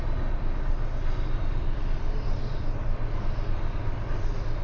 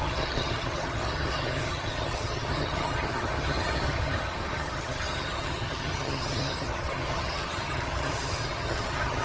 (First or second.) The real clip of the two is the first